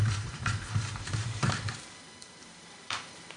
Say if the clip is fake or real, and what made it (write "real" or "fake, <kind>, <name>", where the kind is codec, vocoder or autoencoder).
fake, vocoder, BigVGAN v2